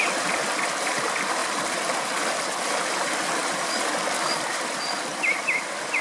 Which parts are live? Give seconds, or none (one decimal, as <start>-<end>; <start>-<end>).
none